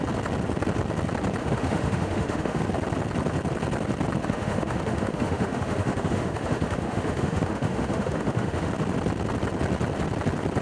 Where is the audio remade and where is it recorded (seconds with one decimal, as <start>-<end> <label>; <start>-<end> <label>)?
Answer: 0.0-1.4 recorded; 1.4-2.6 remade; 2.6-4.2 recorded; 4.2-8.7 remade; 8.7-10.6 recorded